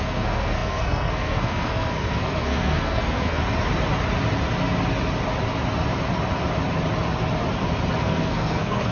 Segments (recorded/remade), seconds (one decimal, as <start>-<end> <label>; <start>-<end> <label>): 0.0-3.4 remade; 3.4-8.0 recorded; 8.0-8.9 remade